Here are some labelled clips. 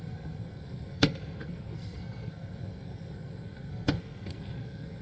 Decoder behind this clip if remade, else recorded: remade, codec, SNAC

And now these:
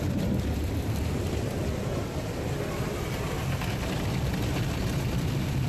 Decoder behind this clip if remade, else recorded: recorded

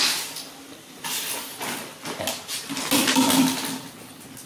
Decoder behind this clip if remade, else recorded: recorded